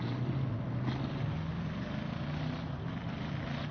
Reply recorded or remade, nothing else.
recorded